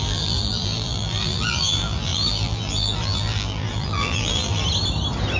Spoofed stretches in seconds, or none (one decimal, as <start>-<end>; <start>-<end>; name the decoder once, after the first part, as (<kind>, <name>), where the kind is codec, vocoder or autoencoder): 0.0-4.6 (vocoder, BigVGAN v2)